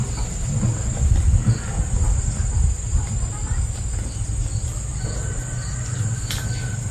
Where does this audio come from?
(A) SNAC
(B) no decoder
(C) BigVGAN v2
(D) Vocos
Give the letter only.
B